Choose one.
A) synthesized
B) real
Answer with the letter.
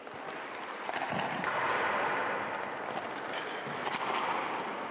B